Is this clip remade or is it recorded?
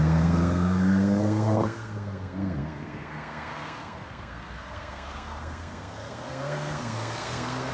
remade